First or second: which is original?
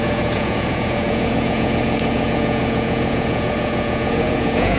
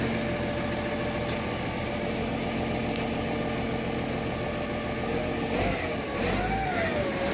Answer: second